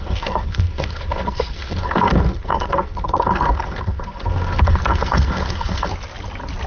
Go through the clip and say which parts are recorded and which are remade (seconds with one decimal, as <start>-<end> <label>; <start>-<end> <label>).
0.0-5.9 remade; 5.9-6.7 recorded